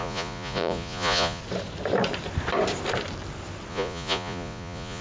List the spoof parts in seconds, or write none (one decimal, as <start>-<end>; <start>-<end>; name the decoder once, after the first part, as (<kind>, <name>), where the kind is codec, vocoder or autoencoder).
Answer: 0.0-1.4 (vocoder, Vocos); 3.7-5.0